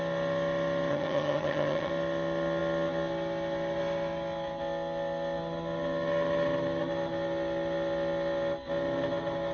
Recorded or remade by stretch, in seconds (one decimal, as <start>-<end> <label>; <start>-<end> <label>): 0.0-0.9 recorded; 0.9-1.9 remade; 1.9-9.5 recorded